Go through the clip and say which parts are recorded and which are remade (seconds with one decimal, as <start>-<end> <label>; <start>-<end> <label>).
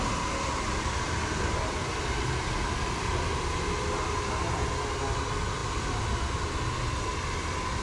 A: 0.0-7.8 recorded